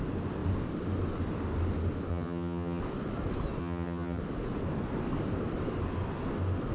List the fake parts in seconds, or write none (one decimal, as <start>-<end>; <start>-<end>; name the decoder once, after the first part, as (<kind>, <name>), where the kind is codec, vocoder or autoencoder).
2.1-2.8 (vocoder, HiFi-GAN); 3.6-4.2